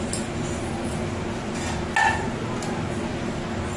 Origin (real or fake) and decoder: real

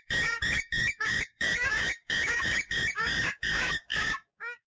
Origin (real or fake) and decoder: fake, codec, DAC